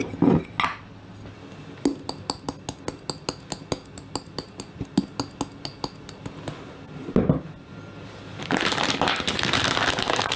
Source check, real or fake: real